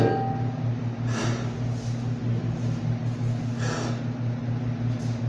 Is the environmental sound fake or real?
real